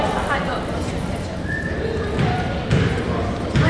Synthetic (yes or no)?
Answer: no